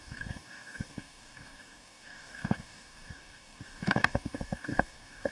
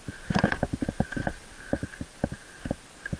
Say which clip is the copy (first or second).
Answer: first